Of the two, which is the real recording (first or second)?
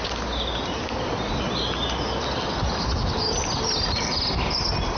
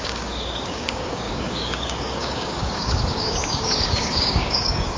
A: first